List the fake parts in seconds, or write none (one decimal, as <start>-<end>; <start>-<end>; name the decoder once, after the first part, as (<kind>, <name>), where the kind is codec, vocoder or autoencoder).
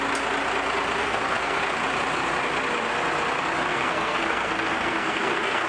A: 1.0-1.6 (codec, SNAC); 3.7-5.7